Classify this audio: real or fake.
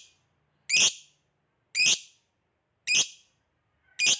real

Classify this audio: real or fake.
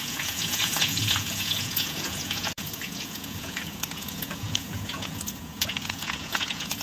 fake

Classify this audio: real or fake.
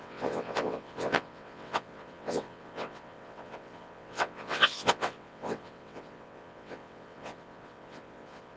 fake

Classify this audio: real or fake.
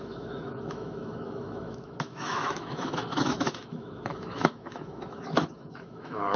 fake